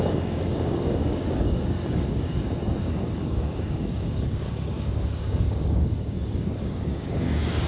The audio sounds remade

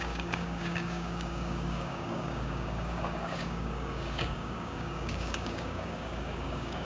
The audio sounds remade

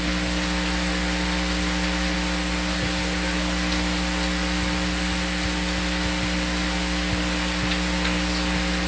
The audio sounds recorded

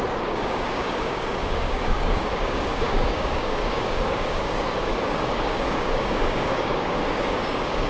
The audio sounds remade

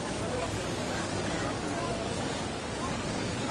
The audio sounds remade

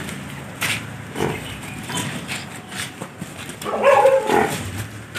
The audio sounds recorded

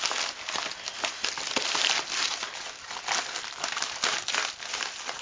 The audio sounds recorded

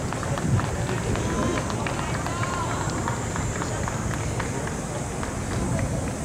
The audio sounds recorded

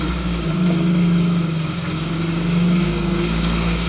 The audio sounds remade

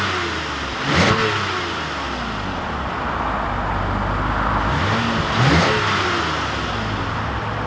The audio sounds recorded